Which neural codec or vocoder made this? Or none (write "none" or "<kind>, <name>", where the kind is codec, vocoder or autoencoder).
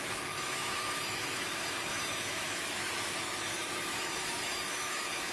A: autoencoder, DAC-VAE